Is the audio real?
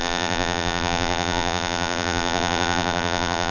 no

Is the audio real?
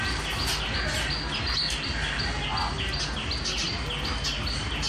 yes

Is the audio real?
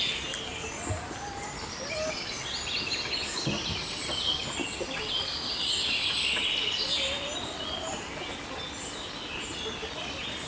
yes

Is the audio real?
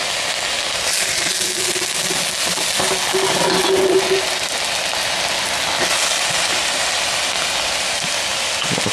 yes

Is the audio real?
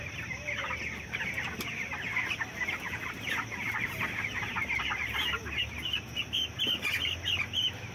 yes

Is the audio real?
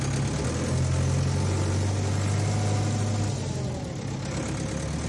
yes